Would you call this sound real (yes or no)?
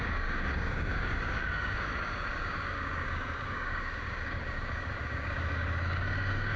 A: no